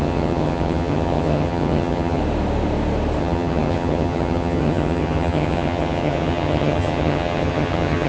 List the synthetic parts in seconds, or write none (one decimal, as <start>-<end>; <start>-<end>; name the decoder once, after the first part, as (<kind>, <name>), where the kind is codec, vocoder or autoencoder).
0.0-2.2 (vocoder, HiFi-GAN); 3.2-8.1